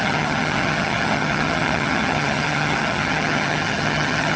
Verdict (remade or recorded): remade